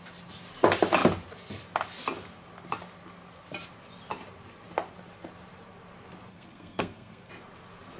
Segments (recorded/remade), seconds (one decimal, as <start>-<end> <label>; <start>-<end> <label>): 0.0-6.3 recorded; 6.3-7.3 remade; 7.3-8.0 recorded

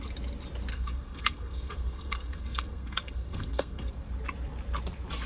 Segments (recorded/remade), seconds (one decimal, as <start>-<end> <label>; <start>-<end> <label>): 0.0-0.7 recorded; 0.7-3.9 remade; 3.9-5.3 recorded

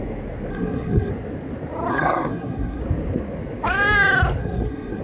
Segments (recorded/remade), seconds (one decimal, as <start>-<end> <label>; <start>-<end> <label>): 0.0-0.5 recorded; 0.5-1.1 remade; 1.1-1.9 recorded; 1.9-2.8 remade; 2.8-4.4 recorded; 4.4-5.0 remade

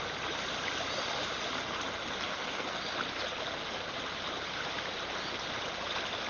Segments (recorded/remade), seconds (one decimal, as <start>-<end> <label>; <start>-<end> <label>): 0.0-2.3 recorded; 2.3-2.8 remade; 2.8-6.3 recorded